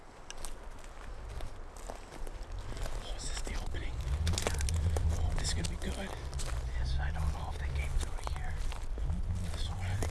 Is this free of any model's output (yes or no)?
yes